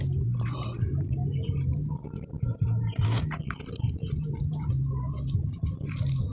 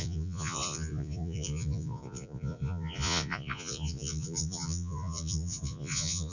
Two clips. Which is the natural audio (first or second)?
first